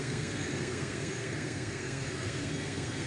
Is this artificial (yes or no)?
yes